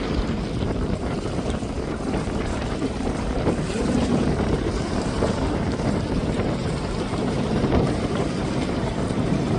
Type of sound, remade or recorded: remade